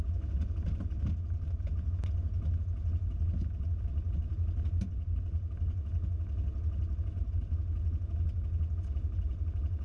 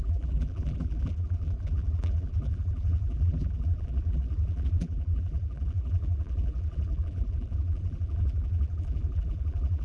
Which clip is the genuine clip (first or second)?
first